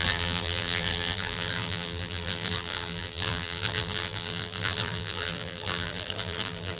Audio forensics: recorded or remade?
remade